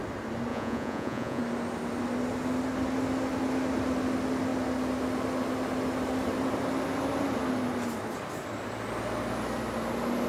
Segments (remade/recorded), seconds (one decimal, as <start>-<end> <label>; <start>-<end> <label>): 0.0-0.5 recorded; 0.5-1.4 remade; 1.4-10.3 recorded